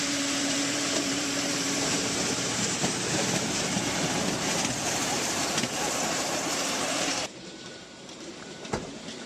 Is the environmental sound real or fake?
fake